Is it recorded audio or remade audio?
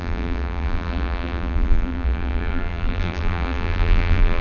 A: remade